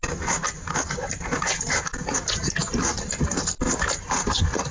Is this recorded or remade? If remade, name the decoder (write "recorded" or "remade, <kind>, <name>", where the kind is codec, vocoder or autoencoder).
recorded